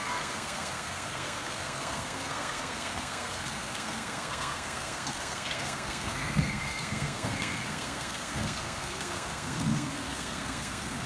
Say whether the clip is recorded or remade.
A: remade